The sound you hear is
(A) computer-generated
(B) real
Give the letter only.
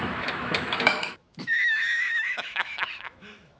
A